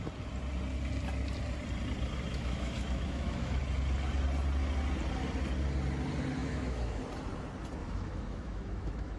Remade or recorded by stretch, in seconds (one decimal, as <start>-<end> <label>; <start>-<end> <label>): 0.0-2.3 recorded; 2.3-3.6 remade; 3.6-6.4 recorded; 6.4-7.0 remade; 7.0-7.8 recorded; 7.8-9.2 remade